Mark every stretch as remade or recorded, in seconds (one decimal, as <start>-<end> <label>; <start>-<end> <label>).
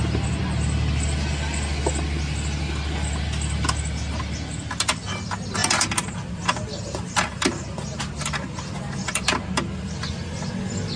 0.0-11.0 recorded